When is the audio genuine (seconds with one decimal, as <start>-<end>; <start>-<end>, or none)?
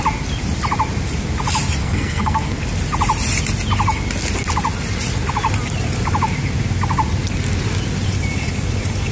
0.0-1.8; 2.6-9.1